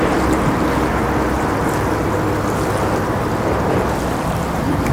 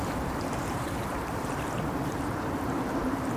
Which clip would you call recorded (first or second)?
first